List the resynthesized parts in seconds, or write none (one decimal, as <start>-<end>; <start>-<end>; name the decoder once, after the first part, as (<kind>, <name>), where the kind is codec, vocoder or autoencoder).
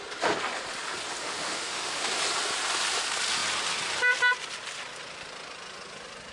1.2-2.1 (autoencoder, DAC-VAE)